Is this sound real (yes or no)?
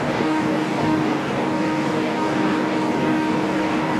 no